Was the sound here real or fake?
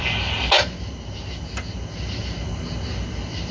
real